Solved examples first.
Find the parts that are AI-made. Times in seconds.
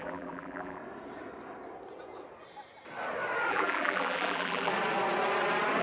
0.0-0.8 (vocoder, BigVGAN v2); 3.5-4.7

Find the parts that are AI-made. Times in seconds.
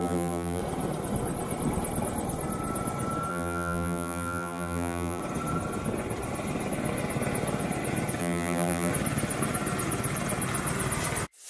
0.0-0.6 (vocoder, BigVGAN v2); 3.3-5.2; 8.2-8.9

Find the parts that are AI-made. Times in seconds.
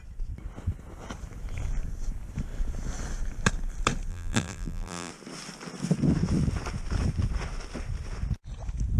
4.1-5.1 (vocoder, BigVGAN v2)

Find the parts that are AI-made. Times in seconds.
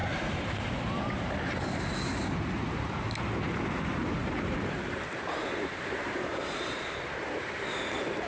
0.0-3.2 (vocoder, BigVGAN v2); 4.2-7.5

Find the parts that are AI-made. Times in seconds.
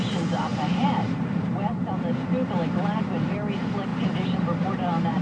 0.5-3.2 (vocoder, BigVGAN v2); 3.9-4.4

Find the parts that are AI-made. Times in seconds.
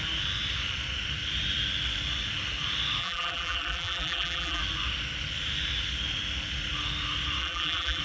3.0-4.6 (vocoder, BigVGAN v2); 7.4-8.0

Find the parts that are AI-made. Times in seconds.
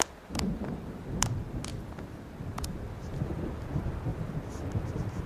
none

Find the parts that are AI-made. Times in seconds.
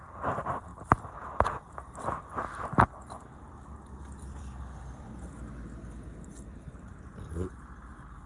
0.7-4.8 (vocoder, BigVGAN v2)